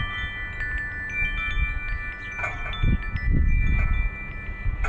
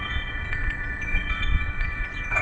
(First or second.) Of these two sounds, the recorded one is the first